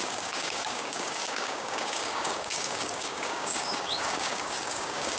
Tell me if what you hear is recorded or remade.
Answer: remade